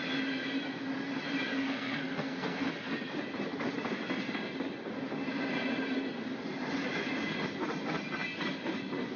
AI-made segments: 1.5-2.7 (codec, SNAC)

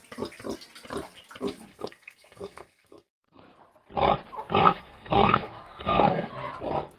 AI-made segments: 1.7-3.4 (codec, SNAC); 4.6-6.3

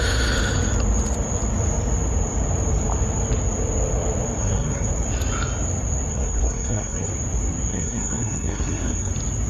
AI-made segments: 4.4-4.9 (codec, SNAC); 6.1-7.1; 7.7-9.1

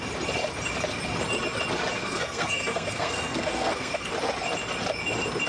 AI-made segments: 2.0-4.1 (codec, SNAC)

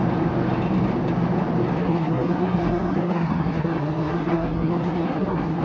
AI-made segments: 1.8-5.6 (codec, SNAC)

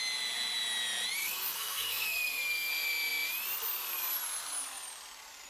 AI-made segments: 1.2-2.7 (codec, SNAC)